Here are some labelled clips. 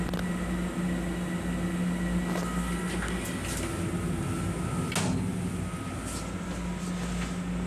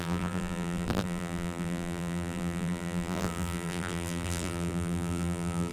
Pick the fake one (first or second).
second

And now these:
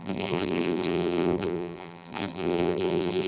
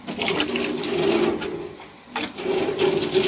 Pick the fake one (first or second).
first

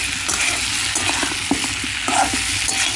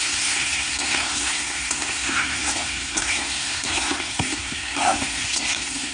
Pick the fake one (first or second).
second